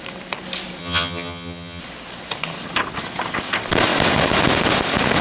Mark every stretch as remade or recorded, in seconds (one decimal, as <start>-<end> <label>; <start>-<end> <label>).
0.0-0.8 recorded; 0.8-1.8 remade; 1.8-5.2 recorded